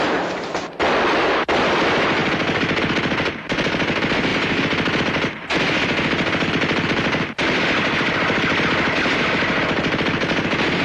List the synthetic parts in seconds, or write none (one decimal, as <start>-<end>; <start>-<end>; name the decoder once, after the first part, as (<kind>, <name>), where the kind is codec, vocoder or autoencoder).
none